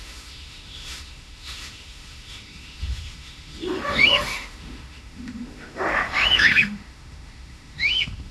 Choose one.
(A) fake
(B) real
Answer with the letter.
A